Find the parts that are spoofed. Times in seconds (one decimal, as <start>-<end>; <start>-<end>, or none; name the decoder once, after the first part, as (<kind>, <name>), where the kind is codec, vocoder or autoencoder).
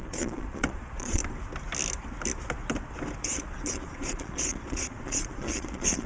0.0-1.2 (vocoder, Vocos); 3.2-6.1